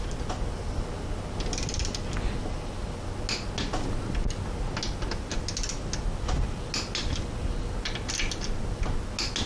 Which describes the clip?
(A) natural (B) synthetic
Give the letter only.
A